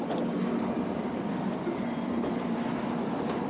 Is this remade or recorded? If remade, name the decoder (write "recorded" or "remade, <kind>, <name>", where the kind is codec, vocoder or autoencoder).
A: recorded